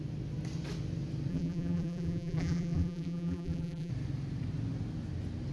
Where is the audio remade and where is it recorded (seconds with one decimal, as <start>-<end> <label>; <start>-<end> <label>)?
0.0-1.3 recorded; 1.3-3.9 remade; 3.9-5.5 recorded